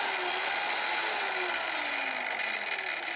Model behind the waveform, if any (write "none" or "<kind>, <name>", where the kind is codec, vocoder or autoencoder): none